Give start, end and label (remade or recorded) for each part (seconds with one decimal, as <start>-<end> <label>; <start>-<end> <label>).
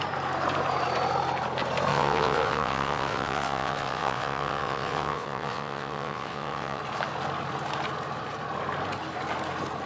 0.0-1.9 recorded; 1.9-6.8 remade; 6.8-9.9 recorded